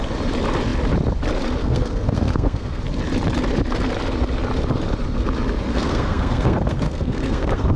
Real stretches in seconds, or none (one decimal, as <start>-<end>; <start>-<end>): 0.0-1.6; 2.8-5.7